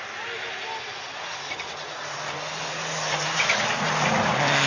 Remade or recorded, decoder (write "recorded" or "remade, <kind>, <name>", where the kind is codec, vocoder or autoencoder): recorded